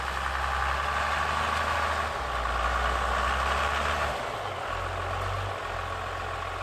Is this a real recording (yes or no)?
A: yes